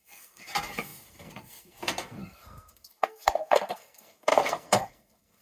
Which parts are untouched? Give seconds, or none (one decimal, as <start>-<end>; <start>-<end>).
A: none